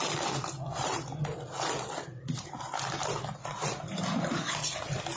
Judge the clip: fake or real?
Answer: real